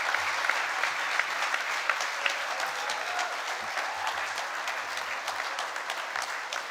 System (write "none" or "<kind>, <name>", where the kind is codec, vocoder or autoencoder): none